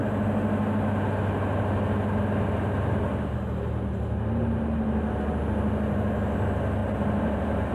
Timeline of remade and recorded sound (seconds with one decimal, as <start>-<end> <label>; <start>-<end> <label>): 0.0-6.8 recorded; 6.8-7.7 remade